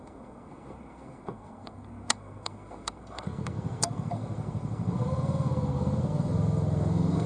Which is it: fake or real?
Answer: fake